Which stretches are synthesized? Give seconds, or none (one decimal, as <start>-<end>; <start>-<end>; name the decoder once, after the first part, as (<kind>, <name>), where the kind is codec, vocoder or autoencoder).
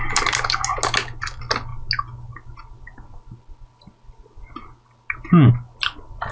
none